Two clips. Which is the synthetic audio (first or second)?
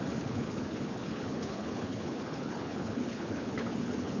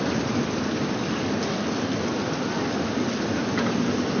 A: first